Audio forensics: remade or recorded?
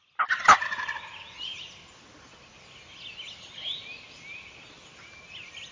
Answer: recorded